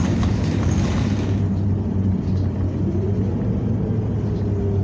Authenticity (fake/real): real